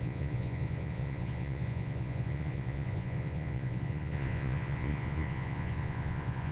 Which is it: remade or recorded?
remade